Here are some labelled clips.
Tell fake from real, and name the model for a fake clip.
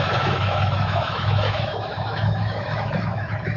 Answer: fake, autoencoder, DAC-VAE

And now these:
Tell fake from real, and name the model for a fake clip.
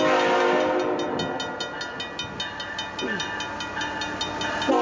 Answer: real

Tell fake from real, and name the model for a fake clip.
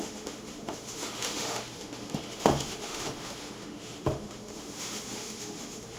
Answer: fake, autoencoder, DAC-VAE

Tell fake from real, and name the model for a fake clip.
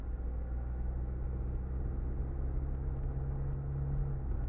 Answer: real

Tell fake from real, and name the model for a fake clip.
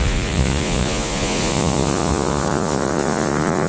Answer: fake, vocoder, Vocos